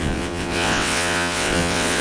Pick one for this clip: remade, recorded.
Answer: remade